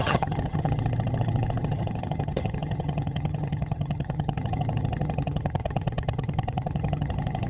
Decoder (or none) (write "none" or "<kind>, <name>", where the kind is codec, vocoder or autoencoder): vocoder, HiFi-GAN